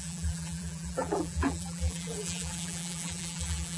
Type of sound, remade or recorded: remade